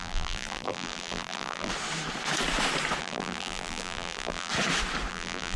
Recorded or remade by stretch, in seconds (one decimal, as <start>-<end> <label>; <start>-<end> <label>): 0.0-1.7 remade; 1.7-3.0 recorded; 3.0-4.5 remade; 4.5-5.1 recorded; 5.1-5.6 remade